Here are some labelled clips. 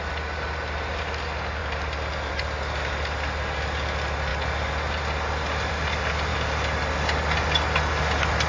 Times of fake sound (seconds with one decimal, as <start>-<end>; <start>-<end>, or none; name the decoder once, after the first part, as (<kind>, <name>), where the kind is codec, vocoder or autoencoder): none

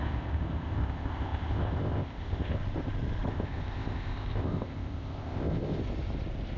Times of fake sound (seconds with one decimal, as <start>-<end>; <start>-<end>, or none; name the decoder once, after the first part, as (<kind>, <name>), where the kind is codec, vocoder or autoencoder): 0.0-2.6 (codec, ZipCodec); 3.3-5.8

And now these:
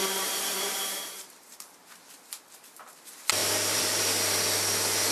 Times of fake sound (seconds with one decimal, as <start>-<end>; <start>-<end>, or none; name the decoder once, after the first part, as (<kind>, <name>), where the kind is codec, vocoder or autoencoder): 0.0-2.1 (vocoder, BigVGAN v2); 3.4-4.0

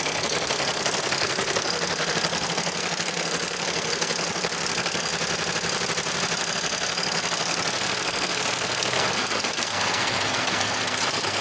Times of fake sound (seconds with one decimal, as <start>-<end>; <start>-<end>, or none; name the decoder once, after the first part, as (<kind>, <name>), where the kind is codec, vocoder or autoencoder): 0.0-5.1 (codec, SNAC); 6.4-11.4

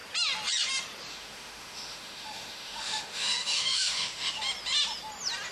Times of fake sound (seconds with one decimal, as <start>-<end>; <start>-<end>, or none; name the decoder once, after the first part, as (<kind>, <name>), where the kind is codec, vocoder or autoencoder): 1.1-4.4 (autoencoder, DAC-VAE)